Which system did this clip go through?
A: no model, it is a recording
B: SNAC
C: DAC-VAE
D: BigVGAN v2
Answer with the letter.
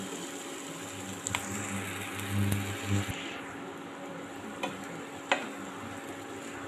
A